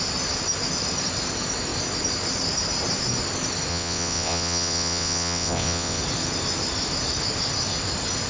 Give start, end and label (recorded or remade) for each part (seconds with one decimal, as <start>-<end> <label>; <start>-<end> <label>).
0.0-3.7 recorded; 3.7-6.0 remade; 6.0-8.3 recorded